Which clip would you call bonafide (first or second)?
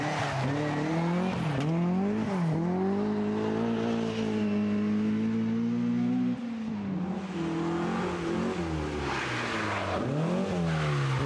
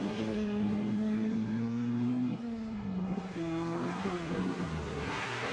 first